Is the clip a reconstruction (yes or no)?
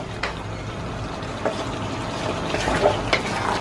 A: no